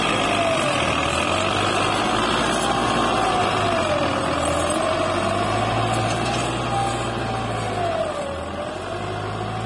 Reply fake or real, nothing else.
real